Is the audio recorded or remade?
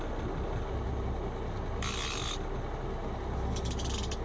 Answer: recorded